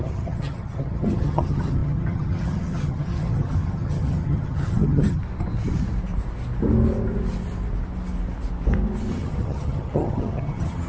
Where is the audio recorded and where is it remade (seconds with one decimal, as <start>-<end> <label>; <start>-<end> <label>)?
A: 0.0-5.2 remade; 5.2-9.1 recorded; 9.1-10.9 remade